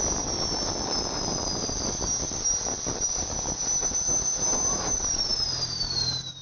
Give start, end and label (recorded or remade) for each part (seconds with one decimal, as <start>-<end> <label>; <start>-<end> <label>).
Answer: 0.0-5.3 remade; 5.3-5.9 recorded; 5.9-6.4 remade

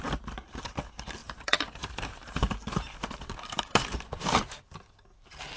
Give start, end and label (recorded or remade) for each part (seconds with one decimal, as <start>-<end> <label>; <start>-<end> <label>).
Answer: 0.0-1.2 recorded; 1.2-4.5 remade; 4.5-5.6 recorded

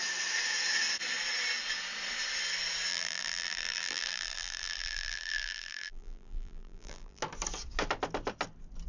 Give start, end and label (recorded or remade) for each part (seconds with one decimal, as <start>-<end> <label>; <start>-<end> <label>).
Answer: 0.0-2.9 recorded; 2.9-7.2 remade; 7.2-8.9 recorded

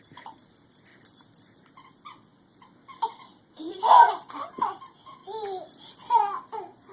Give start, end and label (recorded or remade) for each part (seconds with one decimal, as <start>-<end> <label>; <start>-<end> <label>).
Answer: 0.0-5.2 remade; 5.2-6.9 recorded

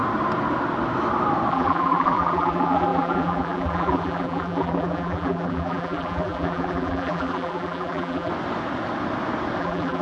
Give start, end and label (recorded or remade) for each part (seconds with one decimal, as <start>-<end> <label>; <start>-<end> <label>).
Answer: 0.0-1.5 recorded; 1.5-8.3 remade; 8.3-9.6 recorded; 9.6-10.0 remade

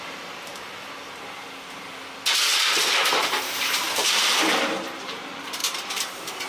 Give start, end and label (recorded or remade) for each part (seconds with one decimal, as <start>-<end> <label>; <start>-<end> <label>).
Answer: 0.0-0.5 remade; 0.5-2.3 recorded; 2.3-6.5 remade

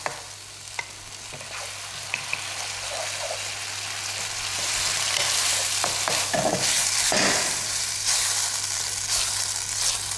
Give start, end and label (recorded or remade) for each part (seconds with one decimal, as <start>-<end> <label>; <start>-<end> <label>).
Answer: 0.0-6.8 recorded; 6.8-7.7 remade; 7.7-10.2 recorded